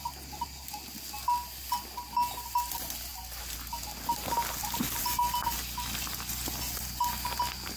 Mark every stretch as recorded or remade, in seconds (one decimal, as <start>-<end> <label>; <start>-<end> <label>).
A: 0.0-7.8 recorded